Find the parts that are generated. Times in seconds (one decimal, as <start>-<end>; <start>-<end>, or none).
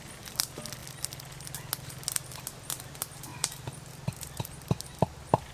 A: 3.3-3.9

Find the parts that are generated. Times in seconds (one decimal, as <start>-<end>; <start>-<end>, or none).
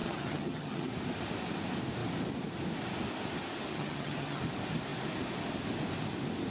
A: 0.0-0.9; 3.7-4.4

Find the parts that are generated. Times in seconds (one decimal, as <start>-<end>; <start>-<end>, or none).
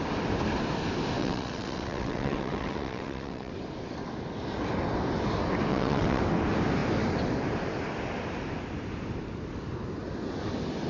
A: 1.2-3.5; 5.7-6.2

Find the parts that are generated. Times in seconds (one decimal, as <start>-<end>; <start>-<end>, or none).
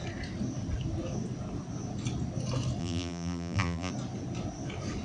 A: 2.8-3.9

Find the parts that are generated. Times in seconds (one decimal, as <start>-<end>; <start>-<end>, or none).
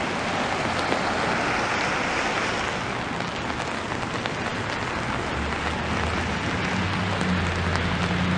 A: none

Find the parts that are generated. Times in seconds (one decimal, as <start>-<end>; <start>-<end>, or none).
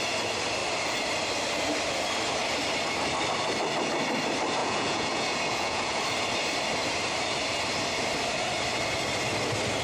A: 4.6-6.0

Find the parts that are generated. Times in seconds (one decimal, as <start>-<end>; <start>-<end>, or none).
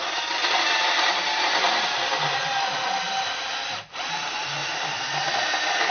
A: 0.0-2.5; 3.3-5.9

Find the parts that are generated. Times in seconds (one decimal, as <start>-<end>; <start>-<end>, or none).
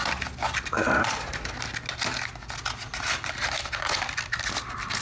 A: none